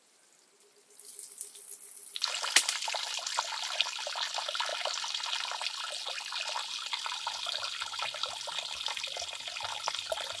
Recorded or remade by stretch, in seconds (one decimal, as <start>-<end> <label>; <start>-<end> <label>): 0.0-10.4 recorded

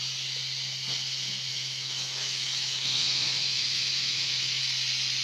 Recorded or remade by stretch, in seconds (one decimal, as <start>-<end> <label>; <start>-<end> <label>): 0.0-1.5 recorded; 1.5-4.6 remade; 4.6-5.2 recorded

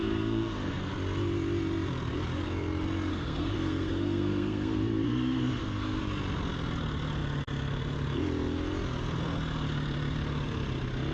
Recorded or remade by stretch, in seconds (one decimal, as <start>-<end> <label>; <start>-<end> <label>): 0.0-0.9 remade; 0.9-3.1 recorded; 3.1-6.0 remade; 6.0-11.1 recorded

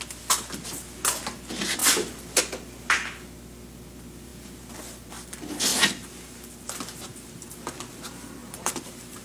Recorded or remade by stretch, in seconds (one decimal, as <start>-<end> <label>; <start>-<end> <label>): 0.0-8.4 recorded; 8.4-9.2 remade

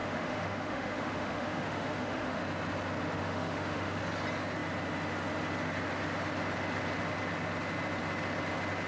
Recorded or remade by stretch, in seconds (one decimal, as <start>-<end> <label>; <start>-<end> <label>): 0.0-2.4 remade; 2.4-3.2 recorded; 3.2-4.0 remade; 4.0-8.9 recorded

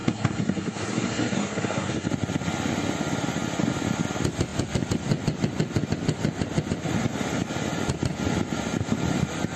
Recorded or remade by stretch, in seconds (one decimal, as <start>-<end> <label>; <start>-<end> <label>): 0.0-2.1 remade; 2.1-9.6 recorded